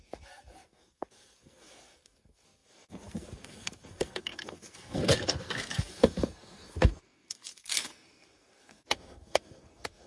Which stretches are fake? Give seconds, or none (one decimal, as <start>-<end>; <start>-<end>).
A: 0.0-10.1